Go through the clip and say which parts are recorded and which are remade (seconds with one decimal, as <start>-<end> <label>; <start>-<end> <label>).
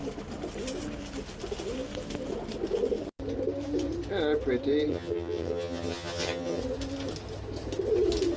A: 0.0-4.9 recorded; 4.9-6.6 remade; 6.6-8.4 recorded